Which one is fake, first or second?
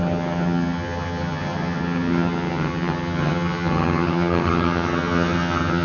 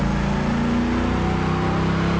first